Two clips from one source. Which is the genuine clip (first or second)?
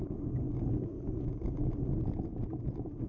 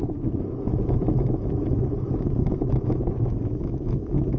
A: first